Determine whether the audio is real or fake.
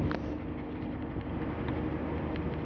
real